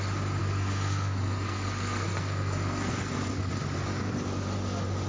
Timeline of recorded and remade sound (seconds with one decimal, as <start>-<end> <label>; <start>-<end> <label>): 0.0-0.4 recorded; 0.4-3.5 remade; 3.5-5.1 recorded